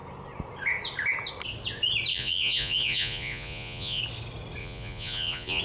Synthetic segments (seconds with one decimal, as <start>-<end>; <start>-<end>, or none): 2.1-4.0; 4.6-5.6